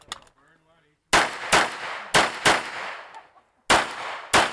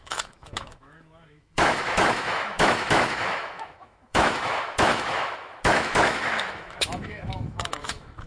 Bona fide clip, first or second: first